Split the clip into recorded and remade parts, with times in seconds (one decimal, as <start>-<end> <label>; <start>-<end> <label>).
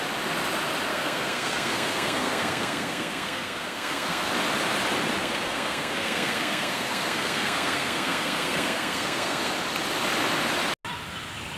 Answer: 0.0-0.9 recorded; 0.9-4.3 remade; 4.3-5.2 recorded; 5.2-9.5 remade; 9.5-11.6 recorded